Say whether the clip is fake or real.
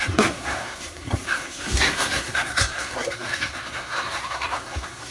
fake